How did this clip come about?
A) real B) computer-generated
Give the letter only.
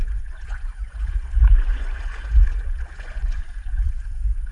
B